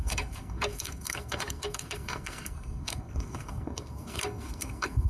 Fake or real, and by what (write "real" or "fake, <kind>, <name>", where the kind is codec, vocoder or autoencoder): fake, codec, SNAC